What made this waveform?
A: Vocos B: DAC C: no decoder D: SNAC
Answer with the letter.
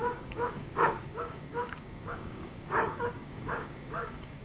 B